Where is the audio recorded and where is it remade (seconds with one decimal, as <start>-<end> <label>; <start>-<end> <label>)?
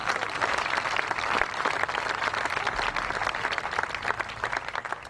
0.0-5.1 recorded